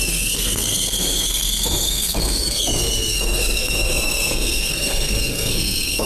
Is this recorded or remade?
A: remade